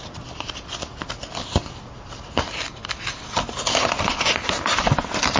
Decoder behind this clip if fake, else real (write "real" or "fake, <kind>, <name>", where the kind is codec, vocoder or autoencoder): real